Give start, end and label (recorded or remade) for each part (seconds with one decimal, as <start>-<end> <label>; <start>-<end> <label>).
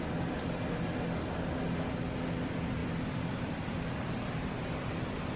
0.0-2.8 recorded; 2.8-4.1 remade; 4.1-5.4 recorded